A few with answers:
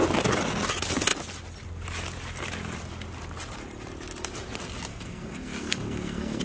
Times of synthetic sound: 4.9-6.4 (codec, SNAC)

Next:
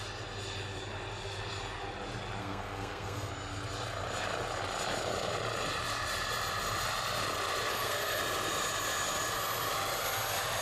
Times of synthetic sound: 2.4-3.3 (codec, SNAC); 7.7-8.2

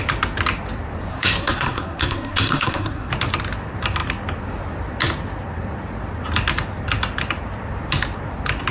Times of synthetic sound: 1.1-3.1 (codec, SNAC)

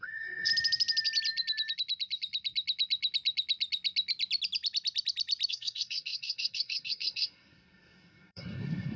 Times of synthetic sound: 0.0-0.5 (codec, SNAC); 5.5-9.0